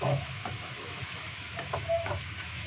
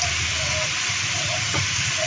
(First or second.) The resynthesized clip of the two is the first